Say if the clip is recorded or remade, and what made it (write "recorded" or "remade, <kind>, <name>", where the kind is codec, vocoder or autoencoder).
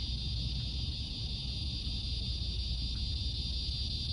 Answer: recorded